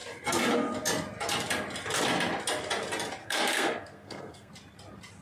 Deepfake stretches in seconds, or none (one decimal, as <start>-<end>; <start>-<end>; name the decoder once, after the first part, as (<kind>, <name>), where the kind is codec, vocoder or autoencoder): 3.2-4.5 (codec, SNAC)